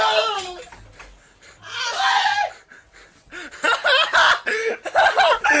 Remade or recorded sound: recorded